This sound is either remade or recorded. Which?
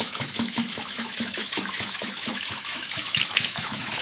remade